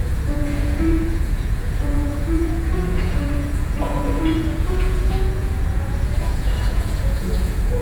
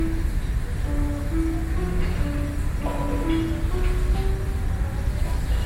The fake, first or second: first